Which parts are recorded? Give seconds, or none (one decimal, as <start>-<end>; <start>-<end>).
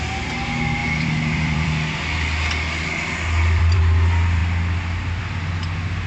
0.0-0.8; 3.8-6.1